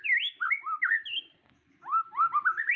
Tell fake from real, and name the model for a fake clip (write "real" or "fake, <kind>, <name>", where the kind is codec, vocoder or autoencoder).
real